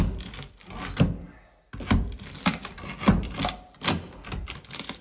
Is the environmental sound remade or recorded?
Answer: recorded